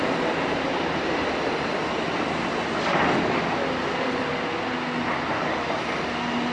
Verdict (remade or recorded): recorded